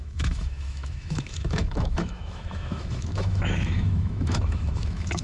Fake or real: fake